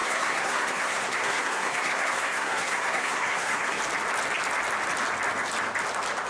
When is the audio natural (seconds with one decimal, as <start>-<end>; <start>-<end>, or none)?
3.8-6.3